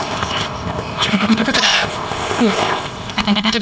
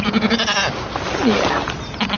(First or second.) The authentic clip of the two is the second